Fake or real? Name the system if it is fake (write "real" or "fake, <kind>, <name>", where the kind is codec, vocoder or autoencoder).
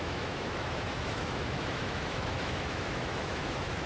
fake, autoencoder, DAC-VAE